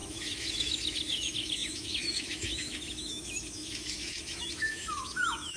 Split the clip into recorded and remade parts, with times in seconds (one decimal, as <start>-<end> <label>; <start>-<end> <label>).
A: 0.0-5.6 remade